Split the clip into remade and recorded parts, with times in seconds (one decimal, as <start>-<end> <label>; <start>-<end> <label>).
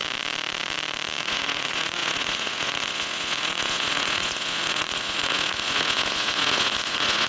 0.0-1.2 recorded; 1.2-7.3 remade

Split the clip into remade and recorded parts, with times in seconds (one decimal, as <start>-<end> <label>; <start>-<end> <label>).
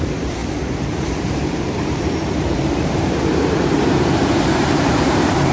0.0-5.5 remade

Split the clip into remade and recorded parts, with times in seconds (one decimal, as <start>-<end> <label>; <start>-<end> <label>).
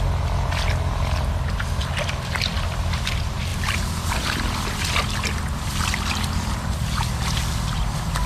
0.0-3.5 recorded; 3.5-4.8 remade; 4.8-8.3 recorded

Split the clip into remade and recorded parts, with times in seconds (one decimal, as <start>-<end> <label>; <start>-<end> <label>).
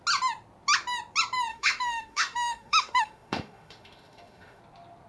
0.0-1.5 recorded; 1.5-4.6 remade; 4.6-5.1 recorded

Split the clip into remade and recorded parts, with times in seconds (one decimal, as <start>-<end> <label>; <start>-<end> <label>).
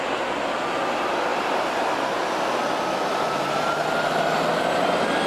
0.0-5.3 recorded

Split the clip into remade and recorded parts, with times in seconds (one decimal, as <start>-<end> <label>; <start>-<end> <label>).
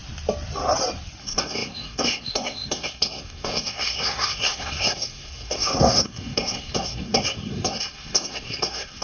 0.0-1.2 recorded; 1.2-9.0 remade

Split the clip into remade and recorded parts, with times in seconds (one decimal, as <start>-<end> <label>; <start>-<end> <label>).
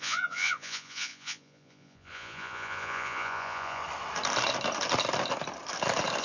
0.0-3.8 remade; 3.8-6.2 recorded